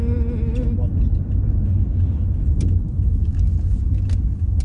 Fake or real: real